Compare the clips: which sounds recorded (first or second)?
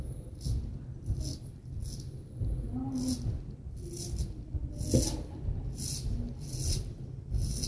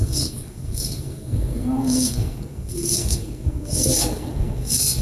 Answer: first